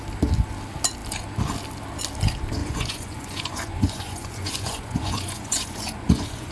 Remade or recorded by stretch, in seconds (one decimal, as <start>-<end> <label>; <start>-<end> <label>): 0.0-2.6 recorded; 2.6-6.5 remade